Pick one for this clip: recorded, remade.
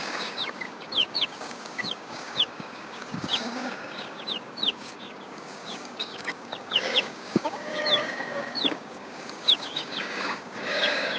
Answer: remade